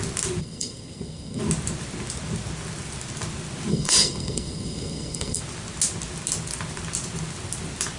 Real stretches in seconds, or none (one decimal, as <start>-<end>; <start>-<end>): 0.0-0.4; 1.4-3.7; 5.4-8.0